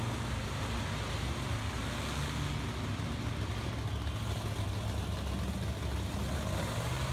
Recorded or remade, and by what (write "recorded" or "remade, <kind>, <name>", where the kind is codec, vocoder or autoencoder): recorded